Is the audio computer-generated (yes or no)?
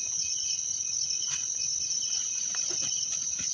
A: no